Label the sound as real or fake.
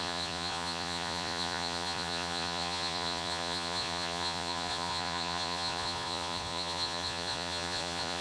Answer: fake